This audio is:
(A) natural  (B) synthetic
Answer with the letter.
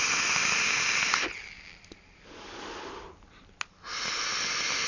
A